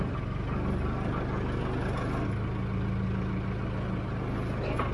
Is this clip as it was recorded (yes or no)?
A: yes